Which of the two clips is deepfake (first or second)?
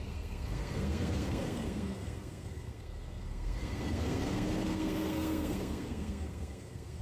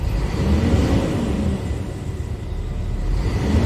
first